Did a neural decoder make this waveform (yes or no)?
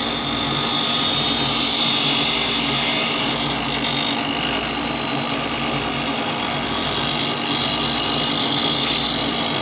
no